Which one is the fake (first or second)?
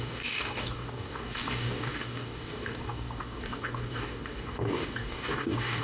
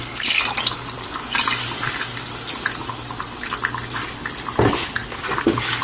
first